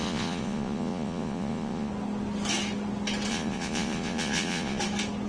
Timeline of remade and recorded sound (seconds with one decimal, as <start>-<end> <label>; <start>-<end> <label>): 0.0-1.9 remade; 1.9-3.3 recorded; 3.3-4.8 remade; 4.8-5.3 recorded